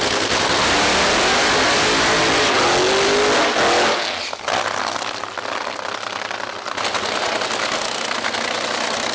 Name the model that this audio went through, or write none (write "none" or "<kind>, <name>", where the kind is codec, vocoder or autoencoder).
none